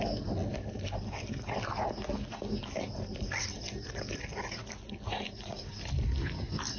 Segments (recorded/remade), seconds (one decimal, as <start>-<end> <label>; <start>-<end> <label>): 0.0-6.8 recorded